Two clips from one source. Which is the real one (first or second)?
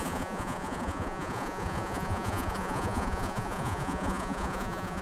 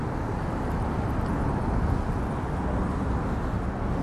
second